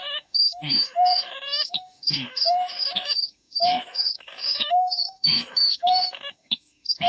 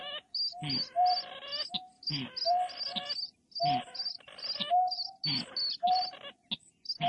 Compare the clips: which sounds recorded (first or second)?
second